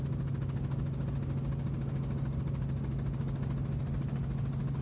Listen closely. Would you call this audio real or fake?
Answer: real